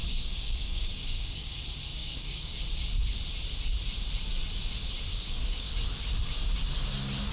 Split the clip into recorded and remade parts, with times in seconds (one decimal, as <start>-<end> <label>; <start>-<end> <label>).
0.0-1.6 remade; 1.6-2.0 recorded; 2.0-2.6 remade; 2.6-5.1 recorded; 5.1-5.7 remade; 5.7-7.3 recorded